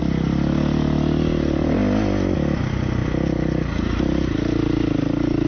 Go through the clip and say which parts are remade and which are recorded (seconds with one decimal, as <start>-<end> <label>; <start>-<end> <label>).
0.0-5.5 recorded